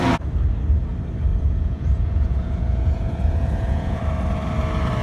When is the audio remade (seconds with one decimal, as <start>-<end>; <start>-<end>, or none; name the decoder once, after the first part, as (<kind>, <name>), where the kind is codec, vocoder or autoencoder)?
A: 1.3-4.0 (vocoder, Vocos)